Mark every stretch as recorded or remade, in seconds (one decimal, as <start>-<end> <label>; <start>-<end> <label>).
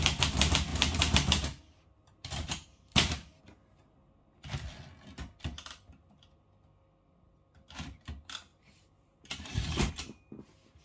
0.0-0.7 recorded; 0.7-3.4 remade; 3.4-8.5 recorded; 8.5-9.9 remade; 9.9-10.8 recorded